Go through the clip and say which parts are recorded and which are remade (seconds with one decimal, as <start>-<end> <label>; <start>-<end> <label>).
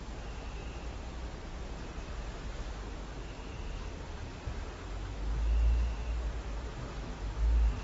0.0-7.8 recorded